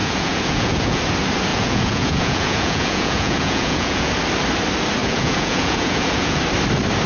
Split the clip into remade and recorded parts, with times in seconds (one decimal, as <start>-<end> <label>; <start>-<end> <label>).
0.0-1.0 remade; 1.0-1.5 recorded; 1.5-4.1 remade; 4.1-5.0 recorded; 5.0-6.4 remade; 6.4-7.1 recorded

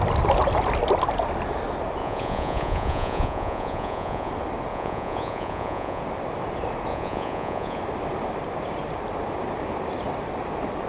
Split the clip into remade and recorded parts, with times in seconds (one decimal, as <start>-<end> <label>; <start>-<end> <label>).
0.0-2.0 recorded; 2.0-4.3 remade; 4.3-4.7 recorded; 4.7-6.0 remade; 6.0-6.9 recorded; 6.9-7.8 remade; 7.8-10.9 recorded